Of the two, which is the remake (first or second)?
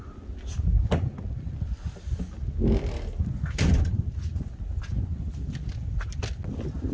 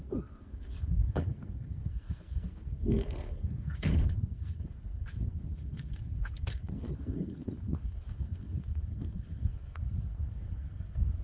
second